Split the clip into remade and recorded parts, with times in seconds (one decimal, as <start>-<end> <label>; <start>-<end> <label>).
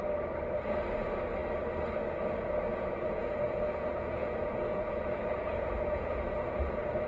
0.0-2.7 recorded; 2.7-7.1 remade